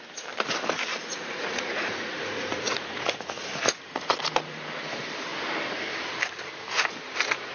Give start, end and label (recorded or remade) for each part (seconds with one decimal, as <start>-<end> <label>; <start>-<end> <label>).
0.0-0.9 recorded; 0.9-4.2 remade; 4.2-7.5 recorded